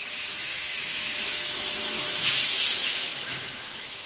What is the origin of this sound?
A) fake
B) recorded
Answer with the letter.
A